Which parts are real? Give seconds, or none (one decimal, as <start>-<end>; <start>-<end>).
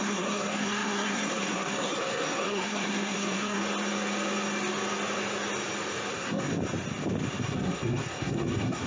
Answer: 3.6-6.1; 6.5-7.4